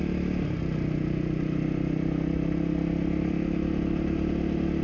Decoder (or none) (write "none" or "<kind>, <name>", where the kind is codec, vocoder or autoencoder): none